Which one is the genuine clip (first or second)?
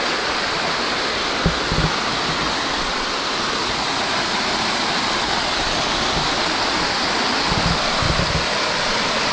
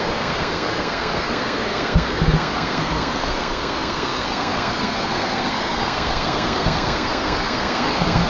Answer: first